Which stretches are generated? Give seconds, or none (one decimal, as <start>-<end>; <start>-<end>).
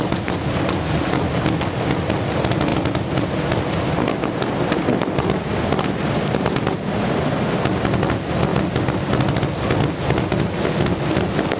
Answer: none